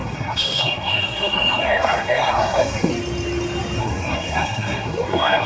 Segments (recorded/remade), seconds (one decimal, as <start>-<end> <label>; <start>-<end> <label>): 0.0-2.9 remade; 2.9-3.8 recorded; 3.8-5.5 remade